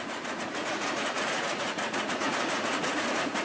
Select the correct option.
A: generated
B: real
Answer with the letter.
A